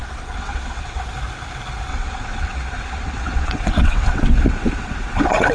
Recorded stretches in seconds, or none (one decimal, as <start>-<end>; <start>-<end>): 1.0-1.9

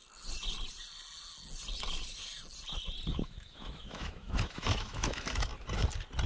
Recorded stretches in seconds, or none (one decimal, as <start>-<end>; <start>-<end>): 0.0-3.1; 5.5-6.3

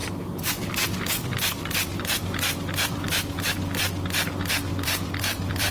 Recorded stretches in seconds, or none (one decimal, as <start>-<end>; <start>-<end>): 3.4-4.7

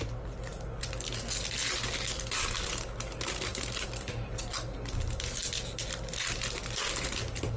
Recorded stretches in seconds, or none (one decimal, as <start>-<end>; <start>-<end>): 0.0-0.5; 1.1-3.5; 4.1-7.6